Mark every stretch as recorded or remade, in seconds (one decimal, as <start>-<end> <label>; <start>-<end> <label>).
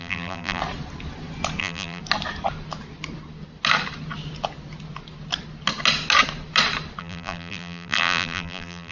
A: 0.0-0.6 remade; 0.6-1.6 recorded; 1.6-2.0 remade; 2.0-7.0 recorded; 7.0-8.9 remade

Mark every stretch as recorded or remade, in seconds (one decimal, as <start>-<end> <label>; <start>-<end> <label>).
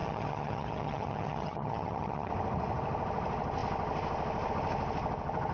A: 0.0-2.3 remade; 2.3-5.5 recorded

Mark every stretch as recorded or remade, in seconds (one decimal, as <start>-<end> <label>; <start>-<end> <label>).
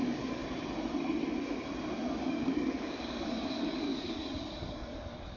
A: 0.0-0.4 remade; 0.4-2.1 recorded; 2.1-5.4 remade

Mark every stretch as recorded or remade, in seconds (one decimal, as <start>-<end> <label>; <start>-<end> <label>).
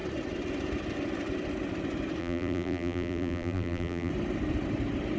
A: 0.0-2.2 recorded; 2.2-4.1 remade; 4.1-5.2 recorded